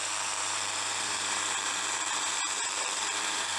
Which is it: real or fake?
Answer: fake